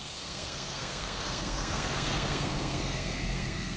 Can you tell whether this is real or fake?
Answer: fake